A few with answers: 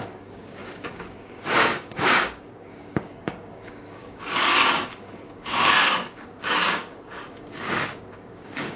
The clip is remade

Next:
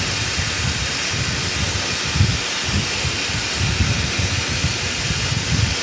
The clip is recorded